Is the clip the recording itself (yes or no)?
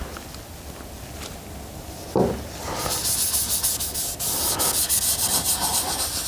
yes